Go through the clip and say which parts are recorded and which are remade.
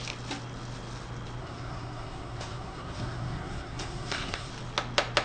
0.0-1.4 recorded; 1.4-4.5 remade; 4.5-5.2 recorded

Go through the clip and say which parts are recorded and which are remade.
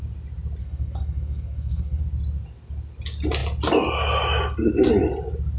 0.0-0.6 recorded; 0.6-2.0 remade; 2.0-5.6 recorded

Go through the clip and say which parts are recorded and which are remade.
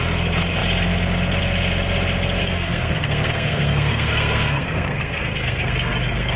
0.0-2.4 recorded; 2.4-6.4 remade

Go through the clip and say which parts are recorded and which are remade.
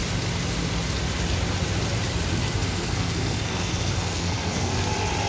0.0-2.6 recorded; 2.6-4.7 remade; 4.7-5.3 recorded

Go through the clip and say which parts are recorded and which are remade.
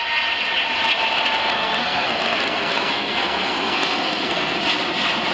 0.0-1.4 recorded; 1.4-4.6 remade; 4.6-5.3 recorded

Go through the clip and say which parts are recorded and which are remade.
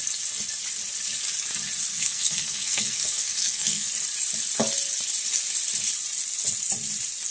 0.0-1.9 recorded; 1.9-3.9 remade; 3.9-7.3 recorded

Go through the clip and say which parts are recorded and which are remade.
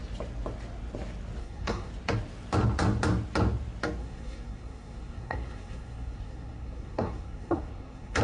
0.0-1.4 recorded; 1.4-1.9 remade; 1.9-4.0 recorded; 4.0-8.2 remade